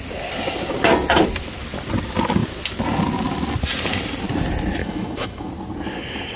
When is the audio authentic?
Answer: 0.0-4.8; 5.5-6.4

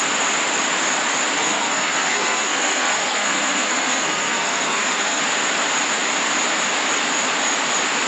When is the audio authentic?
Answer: 0.0-1.4; 5.2-8.1

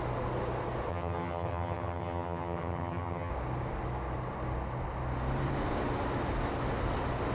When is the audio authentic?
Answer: 0.0-0.9; 3.3-7.3

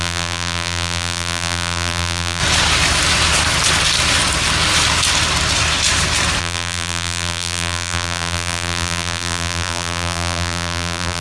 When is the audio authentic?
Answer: 2.4-6.4